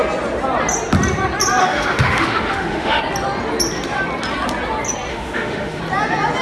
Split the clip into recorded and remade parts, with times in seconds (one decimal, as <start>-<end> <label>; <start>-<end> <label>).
0.0-1.6 recorded; 1.6-3.0 remade; 3.0-5.1 recorded; 5.1-5.8 remade; 5.8-6.4 recorded